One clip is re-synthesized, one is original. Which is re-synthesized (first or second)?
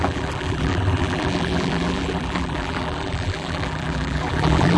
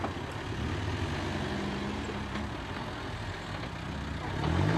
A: first